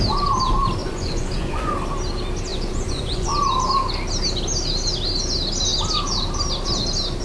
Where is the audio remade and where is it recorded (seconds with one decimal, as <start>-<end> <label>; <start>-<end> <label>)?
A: 0.0-0.8 recorded; 0.8-1.7 remade; 1.7-2.5 recorded; 2.5-3.3 remade; 3.3-7.2 recorded

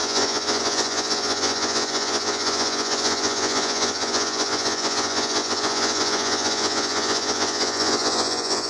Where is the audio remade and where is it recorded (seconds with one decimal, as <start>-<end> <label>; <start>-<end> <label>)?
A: 0.0-8.7 remade

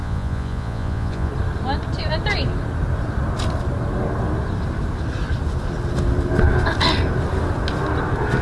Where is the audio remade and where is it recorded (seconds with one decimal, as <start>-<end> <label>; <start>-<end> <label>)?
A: 0.0-1.3 remade; 1.3-8.4 recorded

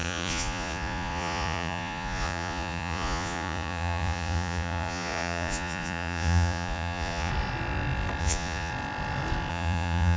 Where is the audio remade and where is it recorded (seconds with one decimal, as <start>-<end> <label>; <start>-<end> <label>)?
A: 0.0-7.3 remade; 7.3-8.2 recorded; 8.2-8.7 remade; 8.7-9.5 recorded; 9.5-10.2 remade

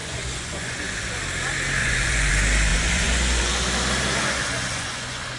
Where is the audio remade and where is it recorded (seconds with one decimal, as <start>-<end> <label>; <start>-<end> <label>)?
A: 0.0-1.2 remade; 1.2-1.8 recorded; 1.8-2.3 remade; 2.3-2.7 recorded; 2.7-3.5 remade; 3.5-4.2 recorded; 4.2-5.4 remade